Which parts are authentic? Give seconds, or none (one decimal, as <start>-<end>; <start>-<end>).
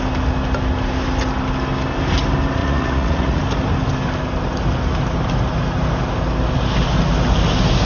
0.0-2.6; 3.4-7.8